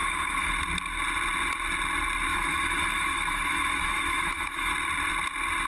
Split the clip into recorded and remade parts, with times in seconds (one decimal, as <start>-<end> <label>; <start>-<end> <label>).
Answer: 0.0-0.5 remade; 0.5-2.3 recorded; 2.3-4.7 remade; 4.7-5.7 recorded